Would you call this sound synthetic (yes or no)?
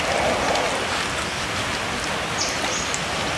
no